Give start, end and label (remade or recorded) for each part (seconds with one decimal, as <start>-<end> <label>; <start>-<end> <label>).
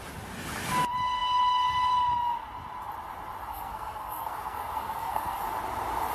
0.0-3.5 recorded; 3.5-5.4 remade; 5.4-6.1 recorded